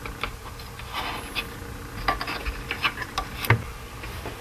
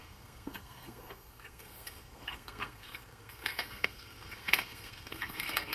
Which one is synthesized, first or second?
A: second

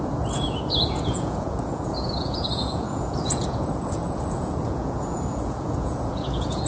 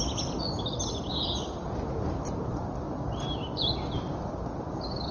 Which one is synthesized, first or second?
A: first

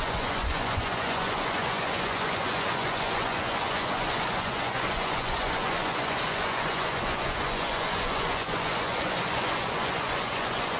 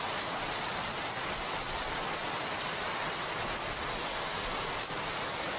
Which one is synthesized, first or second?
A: first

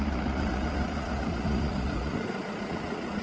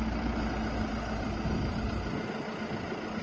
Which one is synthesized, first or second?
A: first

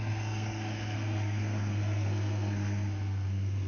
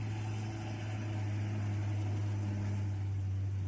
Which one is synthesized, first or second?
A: first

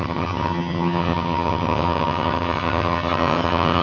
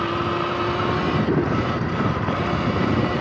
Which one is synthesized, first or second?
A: first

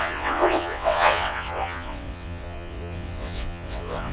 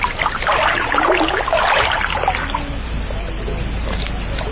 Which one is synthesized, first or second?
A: first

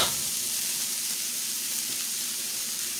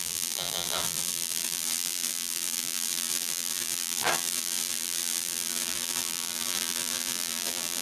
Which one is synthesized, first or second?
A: second